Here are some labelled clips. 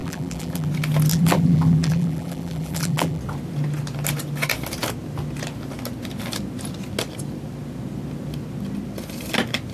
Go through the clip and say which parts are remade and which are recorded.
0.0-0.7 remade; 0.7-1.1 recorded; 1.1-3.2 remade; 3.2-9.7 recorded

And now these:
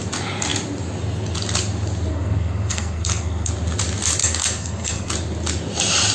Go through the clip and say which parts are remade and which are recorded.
0.0-2.1 recorded; 2.1-3.5 remade; 3.5-4.2 recorded; 4.2-5.1 remade; 5.1-6.1 recorded

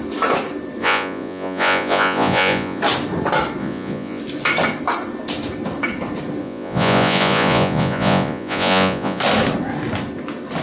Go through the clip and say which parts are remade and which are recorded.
0.0-0.8 recorded; 0.8-2.8 remade; 2.8-3.6 recorded; 3.6-4.2 remade; 4.2-6.4 recorded; 6.4-9.2 remade; 9.2-10.6 recorded

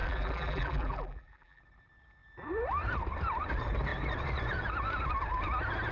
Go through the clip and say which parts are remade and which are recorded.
0.0-1.6 remade; 1.6-5.9 recorded

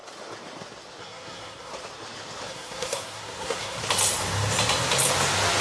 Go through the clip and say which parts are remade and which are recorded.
0.0-1.0 recorded; 1.0-1.7 remade; 1.7-2.5 recorded; 2.5-3.8 remade; 3.8-5.6 recorded

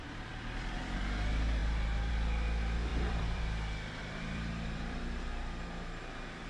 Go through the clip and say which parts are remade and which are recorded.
0.0-2.9 recorded; 2.9-5.0 remade; 5.0-6.5 recorded

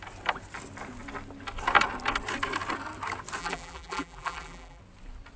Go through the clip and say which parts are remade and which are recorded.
0.0-3.4 recorded; 3.4-4.8 remade; 4.8-5.4 recorded